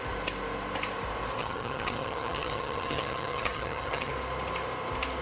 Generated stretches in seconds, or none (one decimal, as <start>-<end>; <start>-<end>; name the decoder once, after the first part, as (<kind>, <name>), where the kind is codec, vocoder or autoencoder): 1.4-4.1 (vocoder, HiFi-GAN)

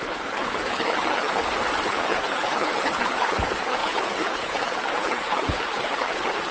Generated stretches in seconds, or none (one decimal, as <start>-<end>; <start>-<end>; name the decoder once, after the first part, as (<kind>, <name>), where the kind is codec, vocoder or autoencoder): 0.0-1.4 (codec, HILCodec); 1.9-6.5